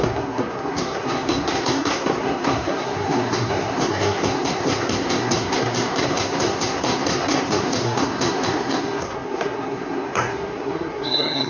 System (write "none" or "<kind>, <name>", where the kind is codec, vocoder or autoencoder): codec, SNAC